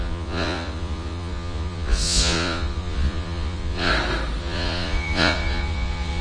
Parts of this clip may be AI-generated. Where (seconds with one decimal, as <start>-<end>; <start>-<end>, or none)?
0.0-3.9; 4.4-6.2